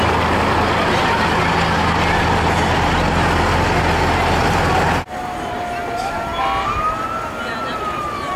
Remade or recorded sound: recorded